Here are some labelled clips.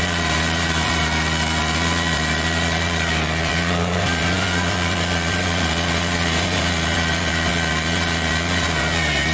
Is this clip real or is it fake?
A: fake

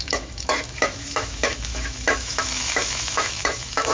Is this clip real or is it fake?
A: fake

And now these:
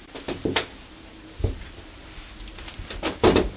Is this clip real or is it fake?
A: real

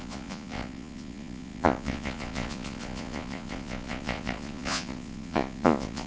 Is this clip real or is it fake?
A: fake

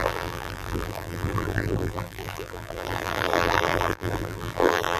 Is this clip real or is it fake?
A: fake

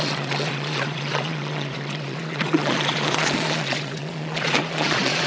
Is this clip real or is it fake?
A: fake